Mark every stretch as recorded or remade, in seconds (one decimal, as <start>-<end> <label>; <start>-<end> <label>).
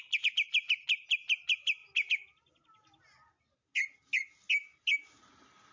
0.0-5.7 recorded